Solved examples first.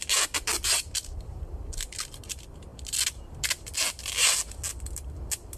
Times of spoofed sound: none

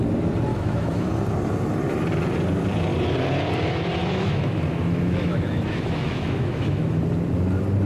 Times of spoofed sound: 0.5-1.1 (autoencoder, DAC-VAE); 4.0-7.0

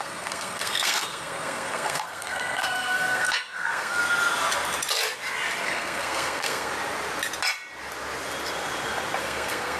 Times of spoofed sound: 0.0-4.0 (codec, SNAC); 5.6-6.7; 9.2-9.8

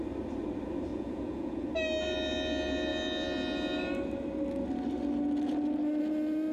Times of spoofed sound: 0.9-1.7 (vocoder, Vocos)

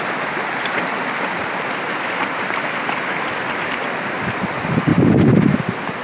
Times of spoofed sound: 4.9-5.6 (vocoder, BigVGAN v2)

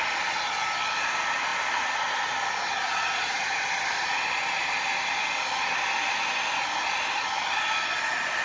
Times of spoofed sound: 1.5-2.0 (vocoder, BigVGAN v2)